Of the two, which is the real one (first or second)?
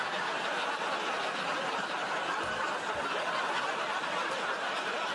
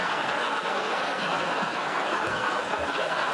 first